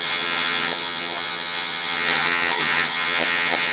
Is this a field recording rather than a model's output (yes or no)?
no